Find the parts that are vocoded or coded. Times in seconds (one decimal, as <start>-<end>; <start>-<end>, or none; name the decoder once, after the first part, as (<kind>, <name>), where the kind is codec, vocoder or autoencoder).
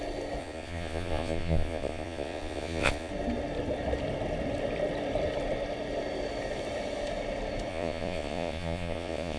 0.4-3.1 (vocoder, Vocos); 7.7-9.4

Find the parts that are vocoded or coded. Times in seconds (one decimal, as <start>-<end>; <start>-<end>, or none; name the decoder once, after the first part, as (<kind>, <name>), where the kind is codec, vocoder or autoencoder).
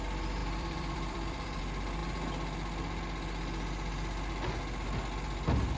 0.4-1.6 (vocoder, BigVGAN v2)